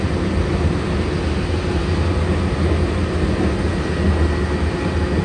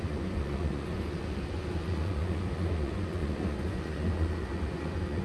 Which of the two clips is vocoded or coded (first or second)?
second